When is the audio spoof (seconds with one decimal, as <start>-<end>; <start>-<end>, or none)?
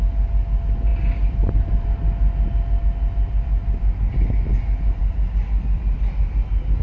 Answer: none